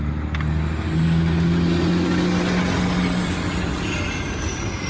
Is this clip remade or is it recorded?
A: recorded